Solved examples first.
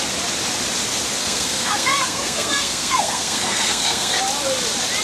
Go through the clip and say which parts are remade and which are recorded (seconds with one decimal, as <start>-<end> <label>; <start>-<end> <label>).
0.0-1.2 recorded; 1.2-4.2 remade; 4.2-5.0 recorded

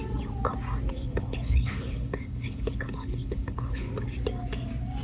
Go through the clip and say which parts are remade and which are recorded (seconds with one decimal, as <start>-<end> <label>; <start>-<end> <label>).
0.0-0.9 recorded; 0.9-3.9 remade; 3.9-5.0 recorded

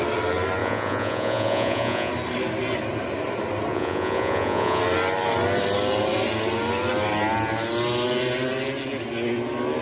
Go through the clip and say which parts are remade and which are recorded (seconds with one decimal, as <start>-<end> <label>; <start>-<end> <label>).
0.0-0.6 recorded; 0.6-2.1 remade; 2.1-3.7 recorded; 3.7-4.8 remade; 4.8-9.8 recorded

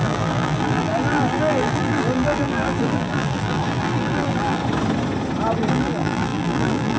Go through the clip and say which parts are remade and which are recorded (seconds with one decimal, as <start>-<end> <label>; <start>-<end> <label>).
0.0-4.6 remade; 4.6-5.7 recorded; 5.7-7.0 remade

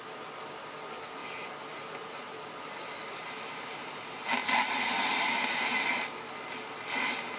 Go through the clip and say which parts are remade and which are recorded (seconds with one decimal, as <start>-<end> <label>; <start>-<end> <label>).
0.0-7.4 remade

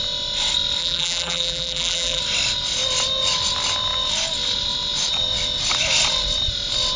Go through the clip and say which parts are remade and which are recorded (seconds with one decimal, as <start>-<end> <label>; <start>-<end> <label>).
0.0-0.8 recorded; 0.8-2.2 remade; 2.2-7.0 recorded

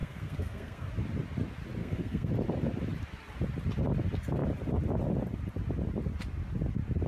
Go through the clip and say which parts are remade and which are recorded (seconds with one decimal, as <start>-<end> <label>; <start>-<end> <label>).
0.0-0.9 remade; 0.9-1.8 recorded; 1.8-2.3 remade; 2.3-7.1 recorded